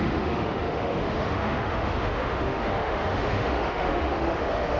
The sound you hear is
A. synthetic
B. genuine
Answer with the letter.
A